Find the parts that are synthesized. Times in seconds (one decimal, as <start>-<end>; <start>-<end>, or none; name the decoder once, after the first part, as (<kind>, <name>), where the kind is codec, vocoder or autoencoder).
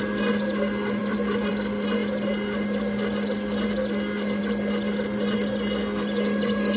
none